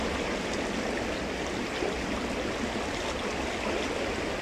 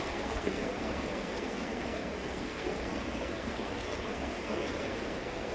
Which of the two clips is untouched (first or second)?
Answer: first